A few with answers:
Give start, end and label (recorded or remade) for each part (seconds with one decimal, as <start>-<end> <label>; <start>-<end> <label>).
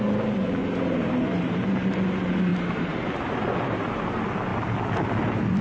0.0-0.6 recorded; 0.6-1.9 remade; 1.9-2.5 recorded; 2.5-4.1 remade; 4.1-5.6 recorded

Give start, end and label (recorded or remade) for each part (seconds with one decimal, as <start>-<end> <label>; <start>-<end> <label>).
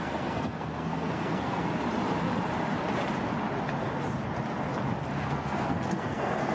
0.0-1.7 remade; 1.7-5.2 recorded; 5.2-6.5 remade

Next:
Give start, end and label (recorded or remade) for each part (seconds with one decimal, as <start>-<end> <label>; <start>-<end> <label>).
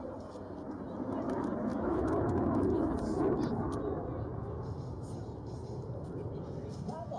0.0-1.7 recorded; 1.7-2.6 remade; 2.6-7.2 recorded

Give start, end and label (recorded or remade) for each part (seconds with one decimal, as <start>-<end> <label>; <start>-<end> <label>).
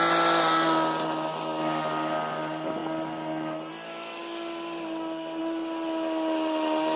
0.0-7.0 recorded